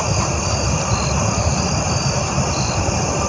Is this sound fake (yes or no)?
no